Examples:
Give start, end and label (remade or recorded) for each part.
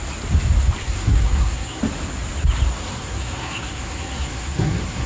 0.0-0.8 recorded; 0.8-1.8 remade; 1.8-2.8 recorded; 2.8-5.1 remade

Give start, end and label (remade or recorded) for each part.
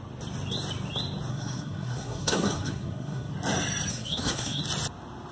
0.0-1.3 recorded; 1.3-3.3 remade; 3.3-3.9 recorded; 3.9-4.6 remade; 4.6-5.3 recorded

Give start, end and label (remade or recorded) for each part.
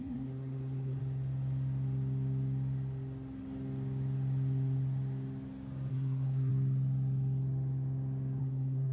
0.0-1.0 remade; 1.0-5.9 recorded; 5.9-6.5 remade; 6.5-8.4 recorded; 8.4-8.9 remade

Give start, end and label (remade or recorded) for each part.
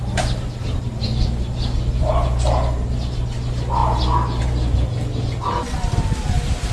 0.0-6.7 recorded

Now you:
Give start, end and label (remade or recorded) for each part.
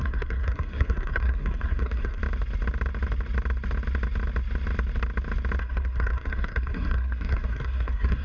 0.0-2.2 remade; 2.2-5.6 recorded; 5.6-8.2 remade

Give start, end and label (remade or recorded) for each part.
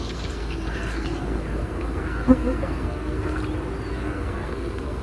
0.0-3.4 remade; 3.4-3.9 recorded; 3.9-5.0 remade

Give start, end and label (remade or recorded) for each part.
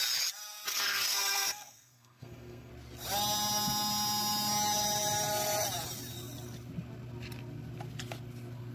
0.0-0.7 recorded; 0.7-2.7 remade; 2.7-8.7 recorded